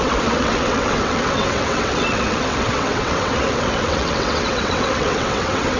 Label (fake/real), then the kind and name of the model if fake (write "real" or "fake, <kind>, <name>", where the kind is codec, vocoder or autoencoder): fake, vocoder, WaveNeXt